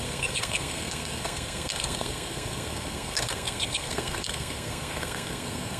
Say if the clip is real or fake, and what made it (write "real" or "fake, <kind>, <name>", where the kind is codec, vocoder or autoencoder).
fake, codec, SNAC